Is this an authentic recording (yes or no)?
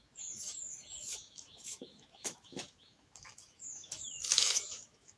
no